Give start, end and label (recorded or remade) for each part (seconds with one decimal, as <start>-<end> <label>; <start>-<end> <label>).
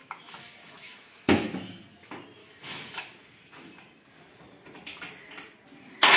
0.0-1.6 remade; 1.6-2.4 recorded; 2.4-3.0 remade; 3.0-6.2 recorded